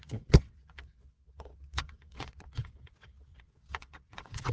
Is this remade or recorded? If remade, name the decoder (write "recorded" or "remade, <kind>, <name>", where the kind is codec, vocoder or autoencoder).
remade, vocoder, WaveNeXt